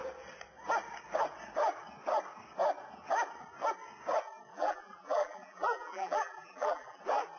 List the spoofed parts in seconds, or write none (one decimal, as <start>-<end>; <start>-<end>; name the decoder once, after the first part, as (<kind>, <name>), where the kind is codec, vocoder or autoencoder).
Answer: 4.5-7.0 (vocoder, BigVGAN v2)